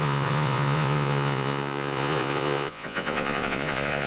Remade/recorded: remade